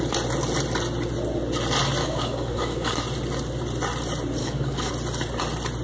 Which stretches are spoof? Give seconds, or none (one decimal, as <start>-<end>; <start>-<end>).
2.0-3.0; 4.4-4.9